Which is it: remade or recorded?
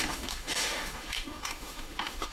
remade